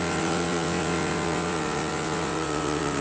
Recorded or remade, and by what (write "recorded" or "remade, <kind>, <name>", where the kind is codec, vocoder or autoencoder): remade, vocoder, WaveNeXt